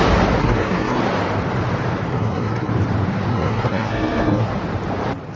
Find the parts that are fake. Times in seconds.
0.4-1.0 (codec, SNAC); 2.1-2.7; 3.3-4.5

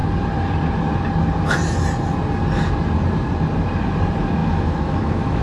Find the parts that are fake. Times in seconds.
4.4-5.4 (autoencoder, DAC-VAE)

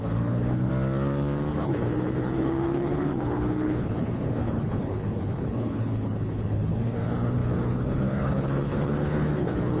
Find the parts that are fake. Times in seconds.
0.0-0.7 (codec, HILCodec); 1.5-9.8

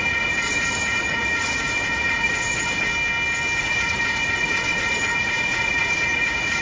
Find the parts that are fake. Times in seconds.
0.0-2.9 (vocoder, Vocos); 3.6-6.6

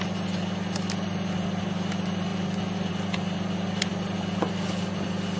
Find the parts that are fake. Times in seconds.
none